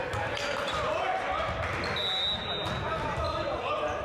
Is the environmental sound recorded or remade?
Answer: recorded